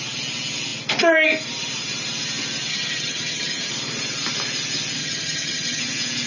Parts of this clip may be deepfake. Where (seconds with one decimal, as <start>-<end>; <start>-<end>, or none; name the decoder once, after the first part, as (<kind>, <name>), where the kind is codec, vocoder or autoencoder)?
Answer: 2.7-3.7 (vocoder, HiFi-GAN); 5.0-5.8